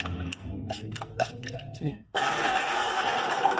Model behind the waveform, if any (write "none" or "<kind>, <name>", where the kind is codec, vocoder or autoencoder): codec, SNAC